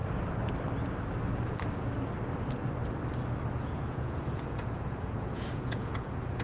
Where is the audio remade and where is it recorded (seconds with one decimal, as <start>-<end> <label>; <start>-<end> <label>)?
0.0-3.6 recorded; 3.6-6.4 remade